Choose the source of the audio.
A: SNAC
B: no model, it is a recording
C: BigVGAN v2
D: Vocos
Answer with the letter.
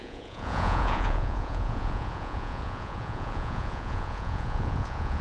D